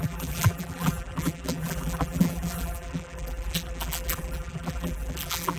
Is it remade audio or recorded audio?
remade